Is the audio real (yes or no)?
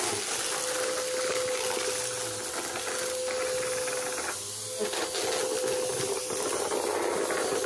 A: yes